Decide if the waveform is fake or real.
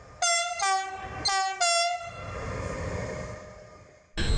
real